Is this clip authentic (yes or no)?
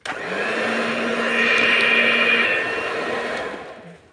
yes